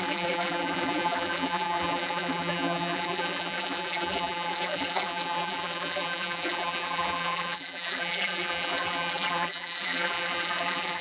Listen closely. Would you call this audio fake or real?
fake